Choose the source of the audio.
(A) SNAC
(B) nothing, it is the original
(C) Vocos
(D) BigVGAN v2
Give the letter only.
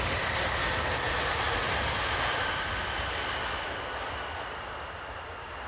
B